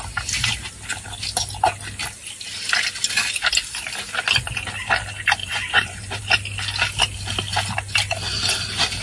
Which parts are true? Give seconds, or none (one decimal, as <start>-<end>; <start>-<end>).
0.0-5.4; 6.2-9.0